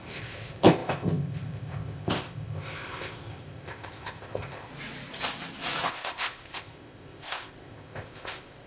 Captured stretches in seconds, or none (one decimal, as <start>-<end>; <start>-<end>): 4.7-5.9